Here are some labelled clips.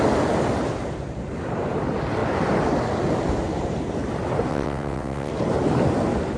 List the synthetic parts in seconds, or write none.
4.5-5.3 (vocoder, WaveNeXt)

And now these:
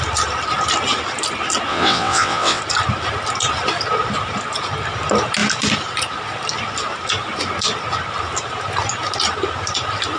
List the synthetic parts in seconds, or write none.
1.7-2.6 (vocoder, WaveNeXt)

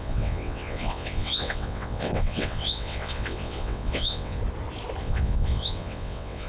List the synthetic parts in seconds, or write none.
0.0-4.4 (vocoder, WaveNeXt); 5.0-6.5

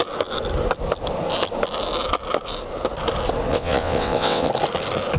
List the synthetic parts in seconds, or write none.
3.5-4.5 (vocoder, WaveNeXt)

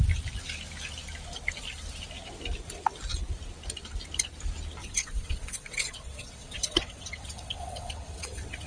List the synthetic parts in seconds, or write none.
4.8-8.7 (vocoder, WaveNeXt)

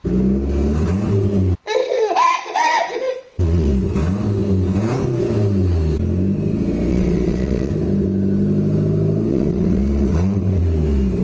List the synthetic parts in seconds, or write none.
1.8-3.7 (vocoder, WaveNeXt); 6.9-7.7; 9.3-10.6